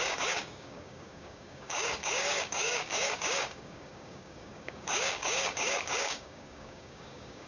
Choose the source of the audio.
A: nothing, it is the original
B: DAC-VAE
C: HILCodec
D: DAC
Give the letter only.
D